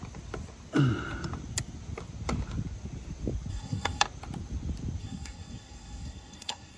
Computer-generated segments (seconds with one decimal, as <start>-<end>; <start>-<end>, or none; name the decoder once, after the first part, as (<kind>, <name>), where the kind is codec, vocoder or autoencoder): 3.5-4.0 (codec, SNAC); 5.0-6.8